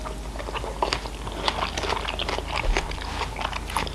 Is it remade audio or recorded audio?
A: recorded